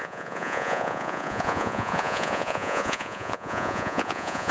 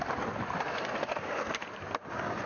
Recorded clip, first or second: second